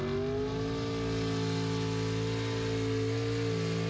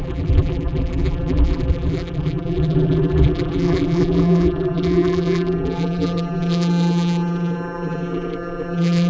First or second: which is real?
first